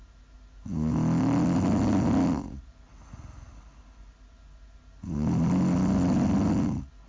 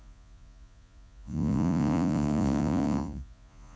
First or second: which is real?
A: first